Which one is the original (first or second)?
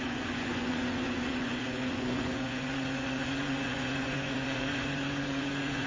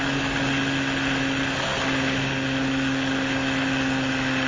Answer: second